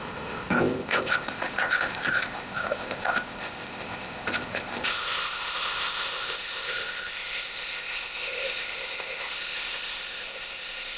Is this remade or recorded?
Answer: remade